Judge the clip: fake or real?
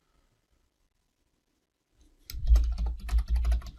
real